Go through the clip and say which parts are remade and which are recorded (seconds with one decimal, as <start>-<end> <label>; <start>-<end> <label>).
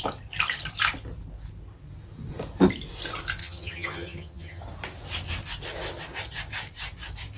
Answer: 0.0-3.4 recorded; 3.4-4.6 remade; 4.6-7.4 recorded